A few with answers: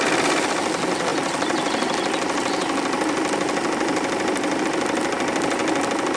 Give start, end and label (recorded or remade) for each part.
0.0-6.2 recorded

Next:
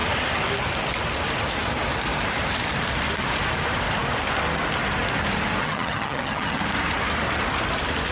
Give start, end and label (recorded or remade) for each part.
0.0-5.6 recorded; 5.6-6.6 remade; 6.6-8.1 recorded

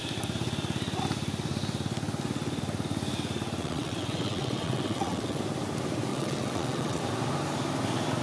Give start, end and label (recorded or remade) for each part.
0.0-3.6 recorded; 3.6-5.4 remade; 5.4-6.1 recorded; 6.1-7.0 remade; 7.0-8.2 recorded

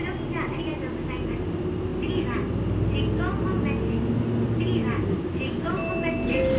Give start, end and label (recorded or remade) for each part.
0.0-6.6 recorded

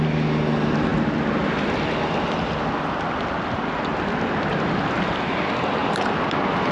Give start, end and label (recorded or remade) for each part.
0.0-6.7 recorded

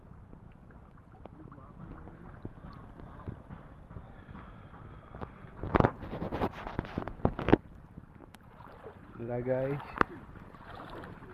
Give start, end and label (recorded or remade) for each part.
0.0-0.6 remade; 0.6-2.4 recorded; 2.4-2.8 remade; 2.8-5.2 recorded; 5.2-11.3 remade

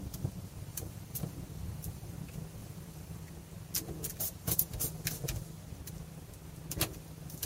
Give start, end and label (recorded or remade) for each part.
0.0-0.7 recorded; 0.7-2.2 remade; 2.2-2.6 recorded; 2.6-3.3 remade; 3.3-4.1 recorded; 4.1-4.7 remade; 4.7-7.5 recorded

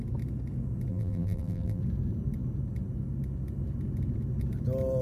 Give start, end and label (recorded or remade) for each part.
0.0-0.9 recorded; 0.9-1.8 remade; 1.8-5.0 recorded